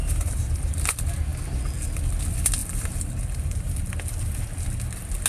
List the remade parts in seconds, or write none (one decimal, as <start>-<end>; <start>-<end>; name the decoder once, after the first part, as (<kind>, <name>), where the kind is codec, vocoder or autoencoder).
0.0-0.9 (vocoder, BigVGAN v2); 2.6-3.9